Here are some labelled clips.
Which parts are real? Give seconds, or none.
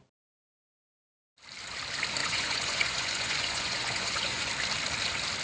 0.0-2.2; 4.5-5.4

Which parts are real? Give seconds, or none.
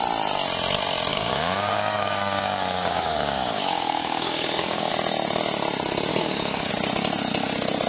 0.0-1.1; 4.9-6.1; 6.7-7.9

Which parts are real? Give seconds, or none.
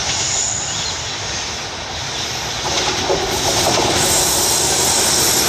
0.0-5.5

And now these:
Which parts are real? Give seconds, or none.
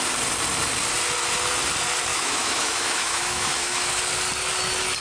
0.0-2.1; 4.0-5.0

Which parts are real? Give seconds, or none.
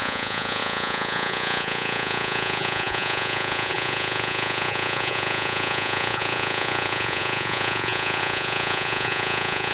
none